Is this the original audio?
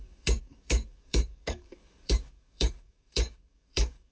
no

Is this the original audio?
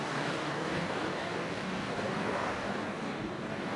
no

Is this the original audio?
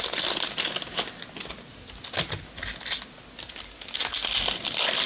yes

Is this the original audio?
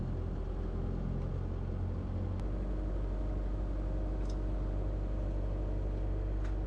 yes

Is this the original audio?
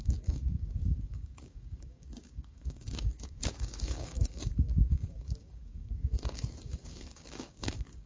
no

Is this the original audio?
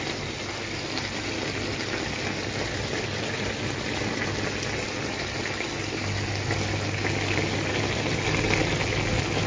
yes